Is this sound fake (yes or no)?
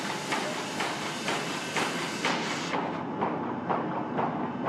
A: no